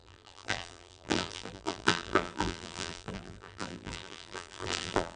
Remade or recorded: remade